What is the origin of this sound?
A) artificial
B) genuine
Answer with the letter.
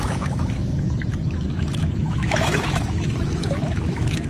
A